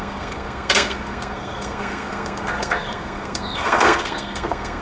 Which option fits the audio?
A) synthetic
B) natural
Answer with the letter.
A